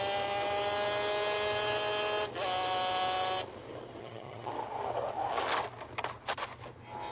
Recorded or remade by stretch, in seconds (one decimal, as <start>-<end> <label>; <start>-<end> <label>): 0.0-4.0 recorded; 4.0-4.5 remade; 4.5-7.1 recorded